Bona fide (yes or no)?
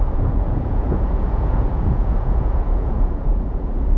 no